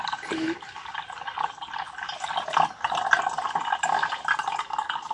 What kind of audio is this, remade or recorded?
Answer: recorded